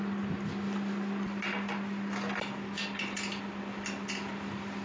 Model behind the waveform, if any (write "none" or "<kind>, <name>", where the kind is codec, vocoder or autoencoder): none